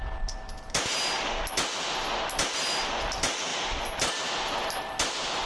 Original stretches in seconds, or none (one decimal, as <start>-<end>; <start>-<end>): 0.0-5.5